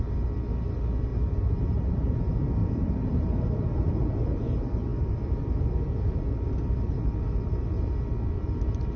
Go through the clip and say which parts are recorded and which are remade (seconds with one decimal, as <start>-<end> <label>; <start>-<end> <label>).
0.0-1.1 recorded; 1.1-1.9 remade; 1.9-2.6 recorded; 2.6-3.9 remade; 3.9-9.0 recorded